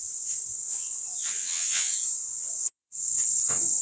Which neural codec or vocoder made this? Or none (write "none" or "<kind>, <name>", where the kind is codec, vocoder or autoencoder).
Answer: vocoder, WaveNeXt